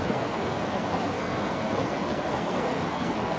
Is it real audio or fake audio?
fake